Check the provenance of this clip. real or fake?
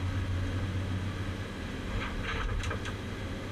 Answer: real